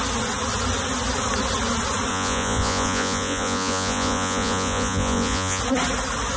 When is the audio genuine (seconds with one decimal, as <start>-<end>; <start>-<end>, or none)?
0.0-2.1; 5.6-6.4